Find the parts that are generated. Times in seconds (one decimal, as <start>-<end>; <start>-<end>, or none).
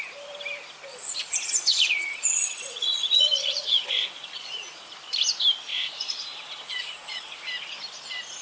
0.9-4.9; 5.7-7.4